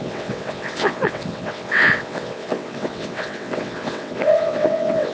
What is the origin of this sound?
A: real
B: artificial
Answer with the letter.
B